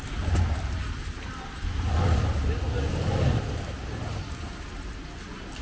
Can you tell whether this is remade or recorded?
recorded